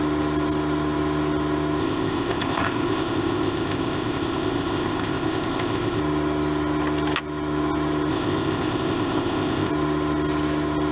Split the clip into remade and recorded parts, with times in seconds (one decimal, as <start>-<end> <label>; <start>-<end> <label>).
0.0-1.8 recorded; 1.8-6.0 remade; 6.0-8.1 recorded; 8.1-9.7 remade; 9.7-10.9 recorded